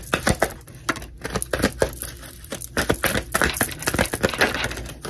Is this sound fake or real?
real